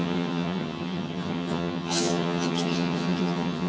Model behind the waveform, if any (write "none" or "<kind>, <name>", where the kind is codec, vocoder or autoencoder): vocoder, HiFi-GAN